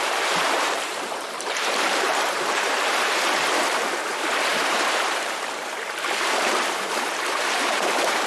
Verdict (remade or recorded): remade